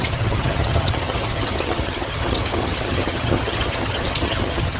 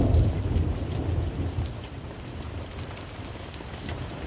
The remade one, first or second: first